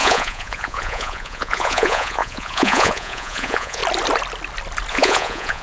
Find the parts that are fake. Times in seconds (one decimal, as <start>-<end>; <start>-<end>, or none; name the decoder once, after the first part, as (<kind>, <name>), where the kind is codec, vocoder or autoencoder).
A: 0.0-3.8 (vocoder, Vocos); 4.9-5.6